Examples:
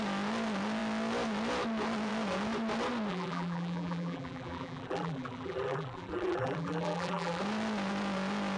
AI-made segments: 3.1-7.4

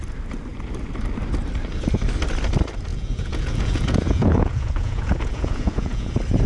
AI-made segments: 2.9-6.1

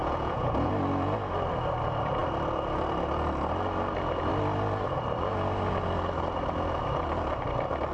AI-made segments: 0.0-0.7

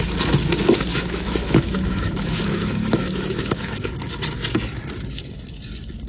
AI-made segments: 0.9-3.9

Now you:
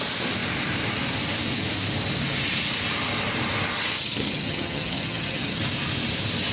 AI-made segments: 4.0-5.6